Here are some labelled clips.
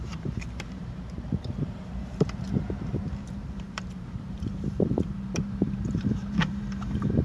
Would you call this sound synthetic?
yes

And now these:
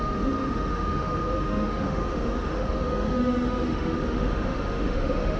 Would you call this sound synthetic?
yes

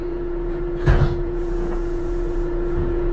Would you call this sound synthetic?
yes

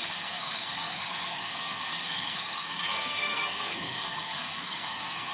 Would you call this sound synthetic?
yes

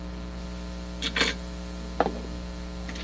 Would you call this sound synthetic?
no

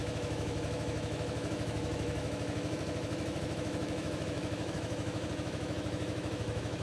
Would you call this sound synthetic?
yes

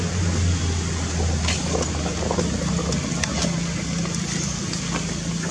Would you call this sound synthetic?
no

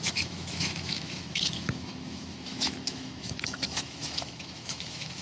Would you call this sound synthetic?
yes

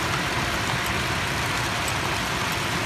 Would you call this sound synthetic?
no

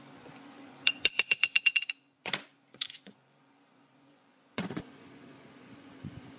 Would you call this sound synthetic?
yes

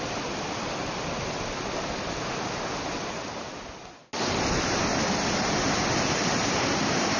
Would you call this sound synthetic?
no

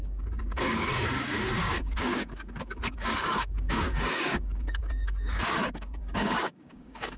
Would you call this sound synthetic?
yes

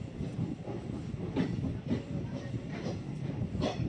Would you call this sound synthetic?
no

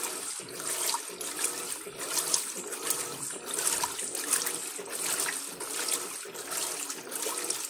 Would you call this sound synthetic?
no